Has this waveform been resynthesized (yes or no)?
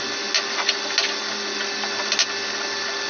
no